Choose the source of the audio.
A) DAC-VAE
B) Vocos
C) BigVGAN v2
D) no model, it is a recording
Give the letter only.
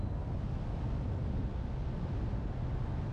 D